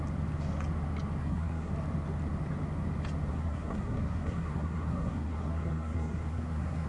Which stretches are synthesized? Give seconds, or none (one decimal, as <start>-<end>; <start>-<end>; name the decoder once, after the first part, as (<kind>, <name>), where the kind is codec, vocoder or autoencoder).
1.2-1.7 (codec, SNAC); 3.3-6.9